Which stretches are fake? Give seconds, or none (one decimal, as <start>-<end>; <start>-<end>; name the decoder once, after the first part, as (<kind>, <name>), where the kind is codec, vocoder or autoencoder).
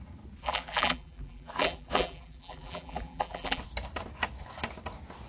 0.4-3.6 (vocoder, BigVGAN v2)